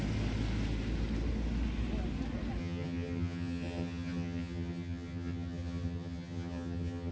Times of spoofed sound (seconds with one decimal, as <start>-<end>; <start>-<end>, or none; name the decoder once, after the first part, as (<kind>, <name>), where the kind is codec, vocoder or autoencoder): 2.6-7.1 (vocoder, HiFi-GAN)